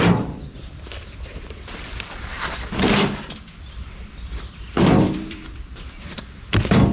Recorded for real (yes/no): no